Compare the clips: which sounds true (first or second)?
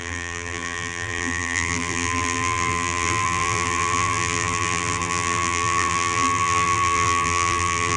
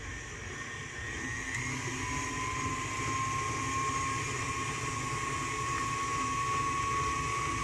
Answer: second